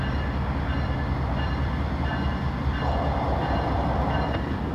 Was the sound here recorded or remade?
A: recorded